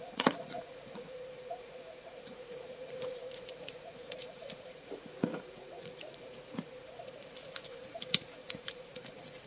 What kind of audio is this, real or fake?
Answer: fake